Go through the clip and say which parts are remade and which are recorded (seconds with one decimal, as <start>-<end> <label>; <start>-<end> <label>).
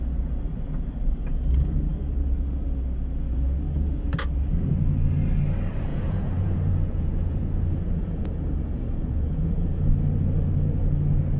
0.0-5.9 recorded; 5.9-9.9 remade; 9.9-11.4 recorded